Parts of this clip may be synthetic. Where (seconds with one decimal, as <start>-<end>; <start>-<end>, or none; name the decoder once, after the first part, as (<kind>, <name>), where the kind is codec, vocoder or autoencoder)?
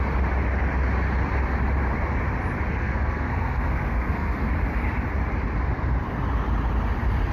2.8-4.5 (codec, SNAC)